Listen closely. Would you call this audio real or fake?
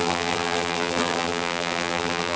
fake